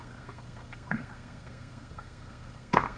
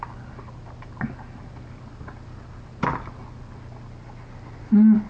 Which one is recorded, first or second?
second